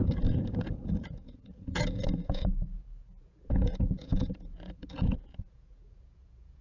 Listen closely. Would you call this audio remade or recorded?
remade